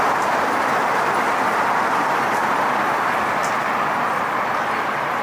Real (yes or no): yes